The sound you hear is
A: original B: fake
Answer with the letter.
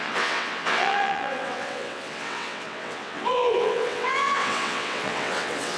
B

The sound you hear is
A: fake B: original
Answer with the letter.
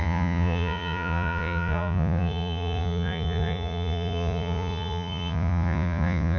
A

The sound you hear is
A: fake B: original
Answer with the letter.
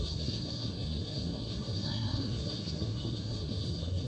A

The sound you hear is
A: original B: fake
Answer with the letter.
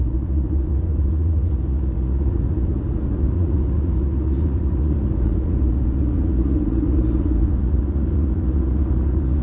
B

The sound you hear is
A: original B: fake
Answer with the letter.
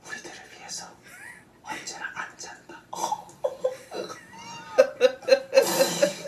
A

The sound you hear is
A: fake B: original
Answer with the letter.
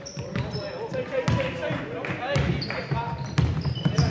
B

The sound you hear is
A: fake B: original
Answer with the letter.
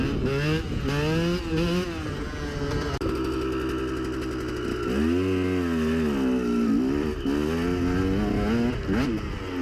B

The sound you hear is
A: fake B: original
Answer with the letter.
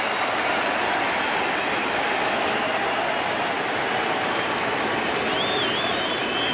B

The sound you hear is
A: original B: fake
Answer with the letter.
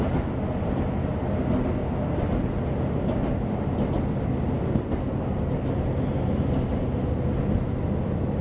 A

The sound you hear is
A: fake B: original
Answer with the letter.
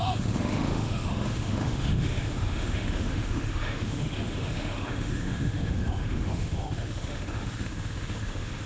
A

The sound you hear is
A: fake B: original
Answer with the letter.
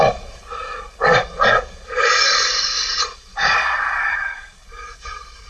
A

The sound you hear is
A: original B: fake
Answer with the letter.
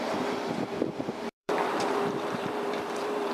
B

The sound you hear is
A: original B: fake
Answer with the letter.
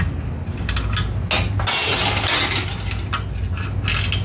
A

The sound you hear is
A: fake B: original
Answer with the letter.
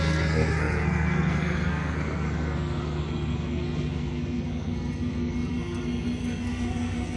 A